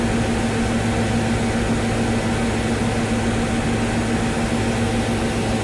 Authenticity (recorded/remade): recorded